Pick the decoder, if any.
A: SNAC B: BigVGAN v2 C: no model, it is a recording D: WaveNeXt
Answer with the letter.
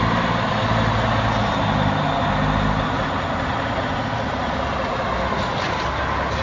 C